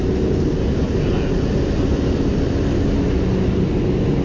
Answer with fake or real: real